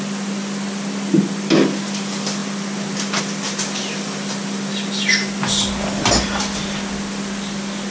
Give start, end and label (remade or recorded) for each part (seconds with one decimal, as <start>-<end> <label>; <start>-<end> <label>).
0.0-7.9 recorded